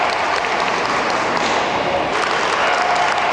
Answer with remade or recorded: recorded